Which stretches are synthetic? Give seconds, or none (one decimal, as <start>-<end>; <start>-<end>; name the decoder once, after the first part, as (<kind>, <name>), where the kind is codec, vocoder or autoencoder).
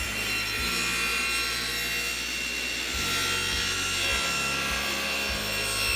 1.1-1.7 (vocoder, BigVGAN v2)